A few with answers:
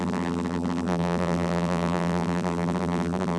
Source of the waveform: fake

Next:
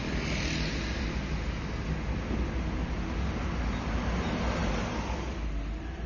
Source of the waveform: real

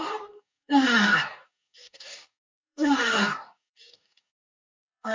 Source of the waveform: fake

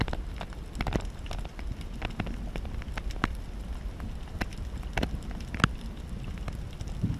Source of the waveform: real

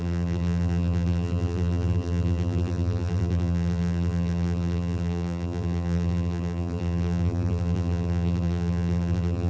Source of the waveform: fake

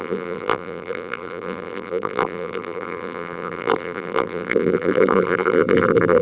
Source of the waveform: fake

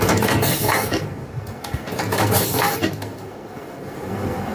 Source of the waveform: fake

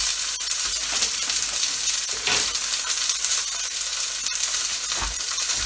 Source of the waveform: real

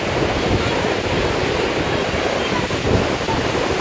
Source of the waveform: real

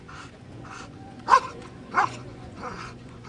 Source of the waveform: fake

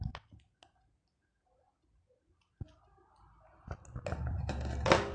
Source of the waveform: real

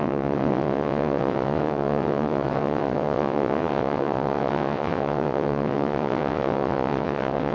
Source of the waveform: fake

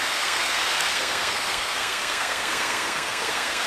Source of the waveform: fake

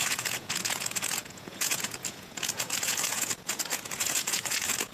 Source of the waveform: fake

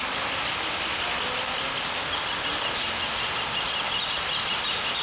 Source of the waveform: real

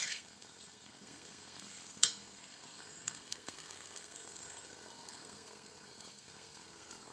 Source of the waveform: fake